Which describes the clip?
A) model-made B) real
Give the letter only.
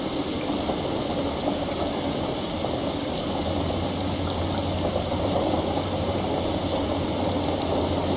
B